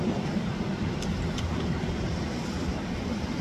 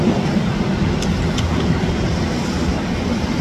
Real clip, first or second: second